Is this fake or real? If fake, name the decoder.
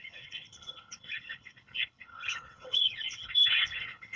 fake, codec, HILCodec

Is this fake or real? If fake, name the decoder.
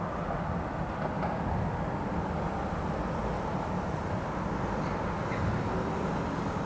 real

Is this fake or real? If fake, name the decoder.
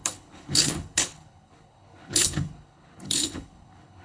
fake, codec, HILCodec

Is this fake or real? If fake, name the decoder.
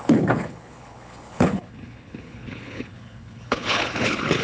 fake, codec, HILCodec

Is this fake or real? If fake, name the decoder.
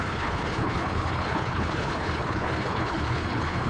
fake, codec, HILCodec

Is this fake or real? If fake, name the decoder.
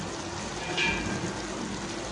real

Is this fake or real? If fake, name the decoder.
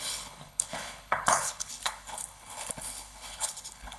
fake, codec, HILCodec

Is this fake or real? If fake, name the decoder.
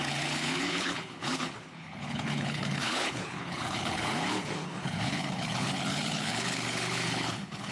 fake, codec, HILCodec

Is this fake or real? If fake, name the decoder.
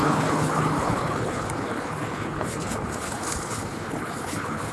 fake, codec, HILCodec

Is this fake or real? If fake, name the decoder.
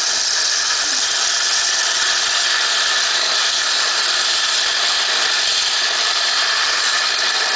real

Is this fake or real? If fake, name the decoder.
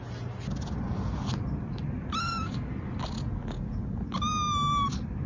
real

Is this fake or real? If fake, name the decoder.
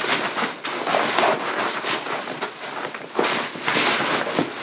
real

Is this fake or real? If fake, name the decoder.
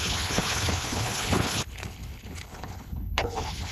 fake, codec, HILCodec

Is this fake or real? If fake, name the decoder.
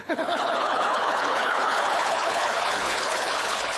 fake, codec, HILCodec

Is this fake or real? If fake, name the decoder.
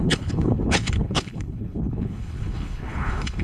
fake, codec, HILCodec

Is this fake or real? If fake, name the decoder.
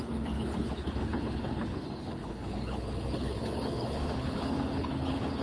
fake, codec, HILCodec